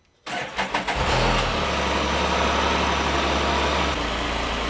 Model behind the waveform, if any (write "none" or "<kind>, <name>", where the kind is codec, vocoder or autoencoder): none